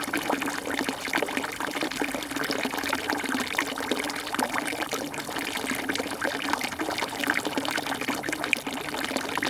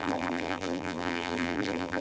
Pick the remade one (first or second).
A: second